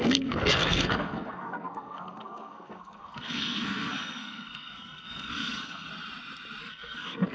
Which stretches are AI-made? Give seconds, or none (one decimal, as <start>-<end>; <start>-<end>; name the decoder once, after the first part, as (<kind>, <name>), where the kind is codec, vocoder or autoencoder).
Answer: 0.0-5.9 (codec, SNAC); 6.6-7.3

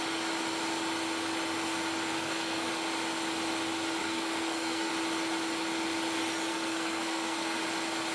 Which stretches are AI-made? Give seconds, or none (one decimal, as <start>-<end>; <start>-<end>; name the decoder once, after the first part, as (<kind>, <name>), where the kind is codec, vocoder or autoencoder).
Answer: 2.1-2.7 (codec, SNAC); 4.0-4.9; 6.5-7.6

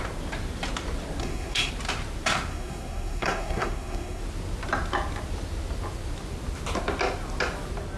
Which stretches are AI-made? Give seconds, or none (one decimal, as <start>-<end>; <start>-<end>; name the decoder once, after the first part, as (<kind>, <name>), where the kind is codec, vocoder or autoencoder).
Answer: 1.2-1.7 (codec, SNAC); 2.5-4.2

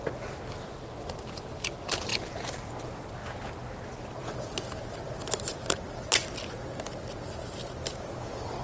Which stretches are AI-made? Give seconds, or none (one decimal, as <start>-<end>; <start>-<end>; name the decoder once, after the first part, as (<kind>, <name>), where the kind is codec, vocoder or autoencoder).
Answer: none